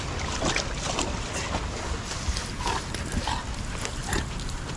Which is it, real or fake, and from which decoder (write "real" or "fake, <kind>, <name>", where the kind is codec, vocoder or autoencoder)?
real